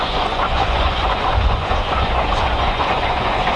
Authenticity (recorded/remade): remade